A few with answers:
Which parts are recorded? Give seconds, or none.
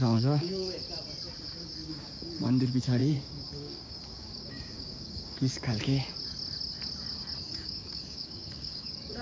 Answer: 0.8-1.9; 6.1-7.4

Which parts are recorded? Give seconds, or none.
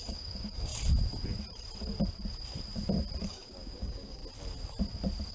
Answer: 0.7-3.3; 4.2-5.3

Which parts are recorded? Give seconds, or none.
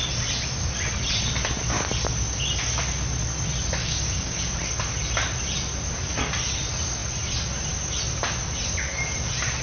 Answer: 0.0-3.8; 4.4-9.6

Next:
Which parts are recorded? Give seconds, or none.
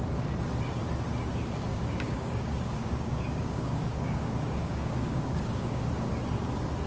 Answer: 0.0-1.7; 5.8-6.9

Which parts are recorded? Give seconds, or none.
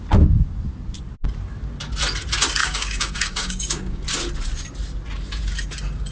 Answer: 0.0-2.6; 4.0-6.1